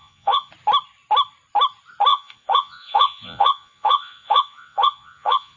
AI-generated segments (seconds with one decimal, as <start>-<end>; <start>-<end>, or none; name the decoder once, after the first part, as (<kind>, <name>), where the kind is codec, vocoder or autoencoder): 0.0-0.5 (vocoder, Vocos); 2.1-5.6